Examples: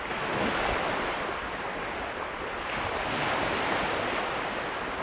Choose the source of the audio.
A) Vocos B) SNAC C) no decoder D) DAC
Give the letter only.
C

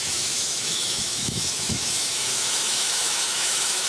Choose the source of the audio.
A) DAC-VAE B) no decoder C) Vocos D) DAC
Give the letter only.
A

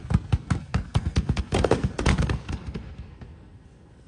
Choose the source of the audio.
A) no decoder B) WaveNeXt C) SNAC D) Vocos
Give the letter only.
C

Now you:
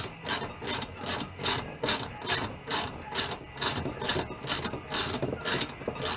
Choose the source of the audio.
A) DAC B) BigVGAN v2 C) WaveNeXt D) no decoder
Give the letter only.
D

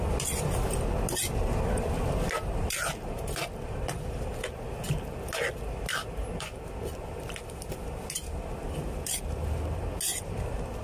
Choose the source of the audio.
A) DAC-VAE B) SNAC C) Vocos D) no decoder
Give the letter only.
D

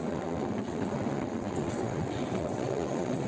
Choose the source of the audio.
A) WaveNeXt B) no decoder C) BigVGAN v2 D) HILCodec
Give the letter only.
A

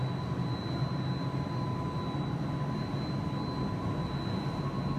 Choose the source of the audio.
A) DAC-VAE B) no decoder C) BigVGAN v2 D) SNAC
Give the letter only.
B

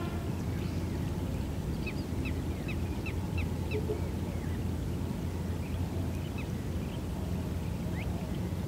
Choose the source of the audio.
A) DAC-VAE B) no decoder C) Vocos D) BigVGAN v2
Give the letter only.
B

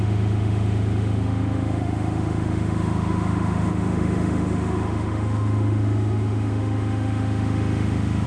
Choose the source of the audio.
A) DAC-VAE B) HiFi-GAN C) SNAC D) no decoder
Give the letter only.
A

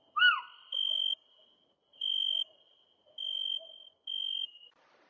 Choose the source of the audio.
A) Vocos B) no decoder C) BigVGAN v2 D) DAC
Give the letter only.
B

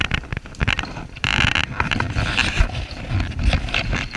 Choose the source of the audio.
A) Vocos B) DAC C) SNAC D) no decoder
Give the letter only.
D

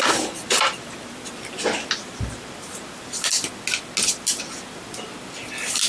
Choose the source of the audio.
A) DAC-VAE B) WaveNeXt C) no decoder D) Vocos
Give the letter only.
C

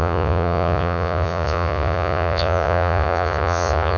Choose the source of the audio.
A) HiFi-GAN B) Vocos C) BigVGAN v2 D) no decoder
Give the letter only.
B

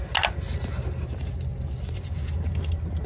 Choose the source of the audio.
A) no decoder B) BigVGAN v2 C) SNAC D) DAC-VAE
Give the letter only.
A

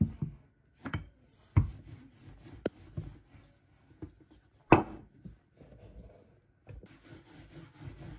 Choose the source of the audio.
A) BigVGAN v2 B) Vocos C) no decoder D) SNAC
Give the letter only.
C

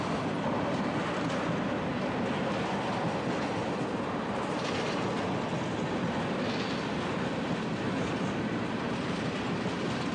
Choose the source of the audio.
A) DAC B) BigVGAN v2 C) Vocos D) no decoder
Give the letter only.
D